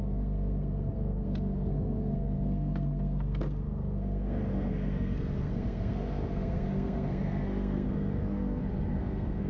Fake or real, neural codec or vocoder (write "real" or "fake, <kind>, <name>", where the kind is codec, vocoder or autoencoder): fake, codec, SNAC